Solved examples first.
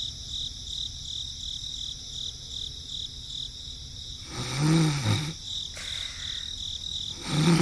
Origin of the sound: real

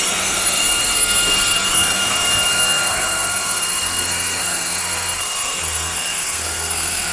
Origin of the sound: fake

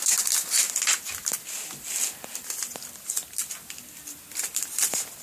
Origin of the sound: real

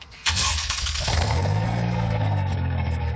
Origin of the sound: fake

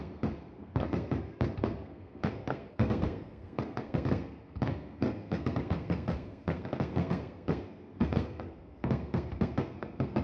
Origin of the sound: fake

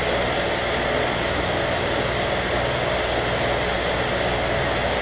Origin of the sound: real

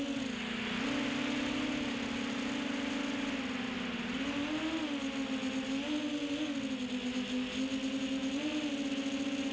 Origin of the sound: real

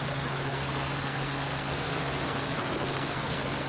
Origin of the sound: fake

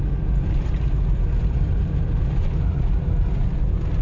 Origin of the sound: real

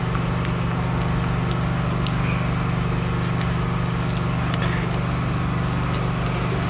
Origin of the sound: real